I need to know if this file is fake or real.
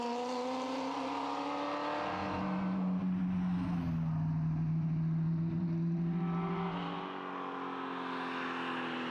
real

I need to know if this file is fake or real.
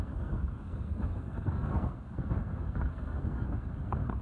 fake